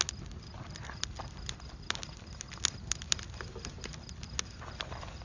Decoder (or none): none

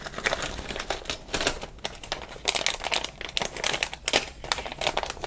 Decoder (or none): none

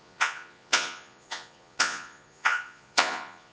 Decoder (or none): vocoder, Vocos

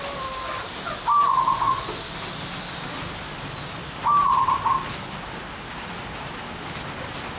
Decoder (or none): none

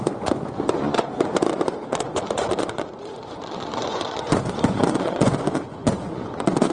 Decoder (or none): vocoder, Vocos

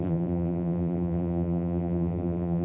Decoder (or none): vocoder, BigVGAN v2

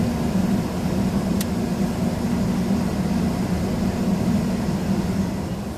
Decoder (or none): none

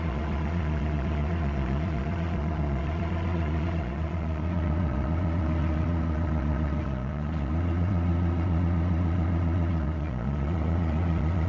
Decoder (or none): vocoder, Vocos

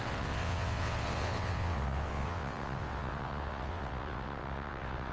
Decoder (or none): vocoder, WaveNeXt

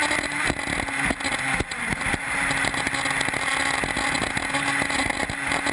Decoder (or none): none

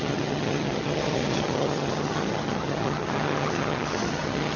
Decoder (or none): vocoder, HiFi-GAN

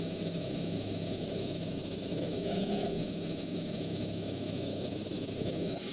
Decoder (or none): autoencoder, DAC-VAE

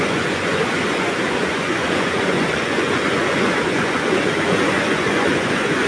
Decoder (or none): vocoder, Vocos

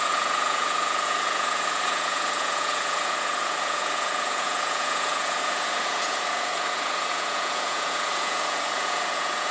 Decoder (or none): vocoder, Vocos